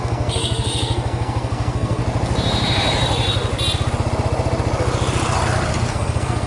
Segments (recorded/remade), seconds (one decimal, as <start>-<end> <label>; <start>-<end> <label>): 0.0-2.0 remade; 2.0-5.9 recorded; 5.9-6.5 remade

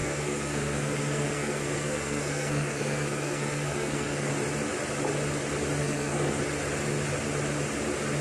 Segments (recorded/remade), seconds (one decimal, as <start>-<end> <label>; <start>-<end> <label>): 0.0-4.3 remade; 4.3-5.8 recorded; 5.8-6.4 remade; 6.4-8.2 recorded

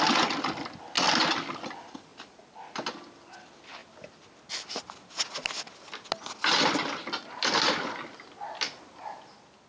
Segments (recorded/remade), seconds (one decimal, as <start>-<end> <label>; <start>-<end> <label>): 0.0-9.7 recorded

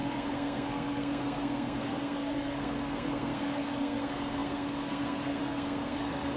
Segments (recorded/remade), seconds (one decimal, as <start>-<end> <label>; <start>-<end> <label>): 0.0-6.4 remade

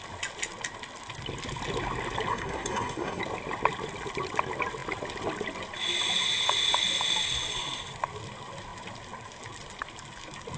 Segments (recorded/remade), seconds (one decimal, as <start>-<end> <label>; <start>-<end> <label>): 0.0-2.3 recorded; 2.3-3.2 remade; 3.2-10.6 recorded

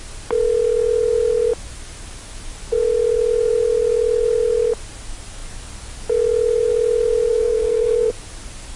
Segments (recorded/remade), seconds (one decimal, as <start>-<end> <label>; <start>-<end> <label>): 0.0-7.3 recorded; 7.3-8.1 remade; 8.1-8.8 recorded